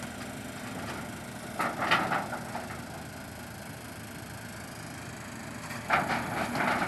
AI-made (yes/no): no